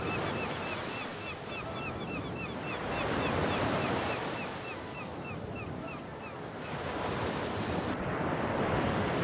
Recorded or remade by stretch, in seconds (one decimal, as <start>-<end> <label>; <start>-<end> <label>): 0.0-9.2 recorded